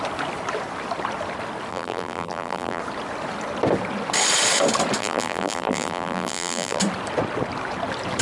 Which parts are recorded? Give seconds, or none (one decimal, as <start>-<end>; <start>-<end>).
0.0-1.7; 2.8-5.0; 6.8-8.2